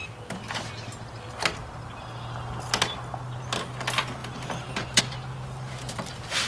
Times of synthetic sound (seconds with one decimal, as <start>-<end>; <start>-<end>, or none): 4.2-5.0